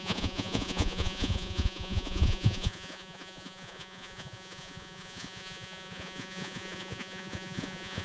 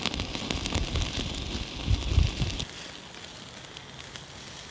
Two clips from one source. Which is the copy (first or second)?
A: first